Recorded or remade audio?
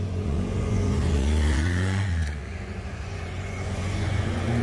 remade